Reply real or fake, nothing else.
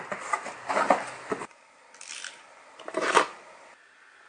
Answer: real